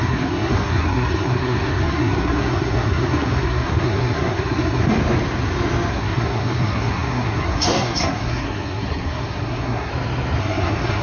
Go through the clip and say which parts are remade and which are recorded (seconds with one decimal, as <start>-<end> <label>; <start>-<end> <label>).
0.0-5.0 remade; 5.0-5.9 recorded; 5.9-9.9 remade; 9.9-10.4 recorded; 10.4-11.0 remade